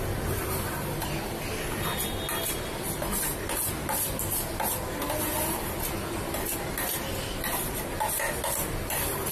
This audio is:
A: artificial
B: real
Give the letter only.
B